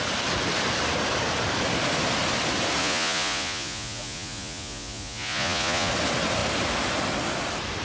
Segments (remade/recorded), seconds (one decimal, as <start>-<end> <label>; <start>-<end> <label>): 0.0-2.8 recorded; 2.8-5.9 remade; 5.9-7.8 recorded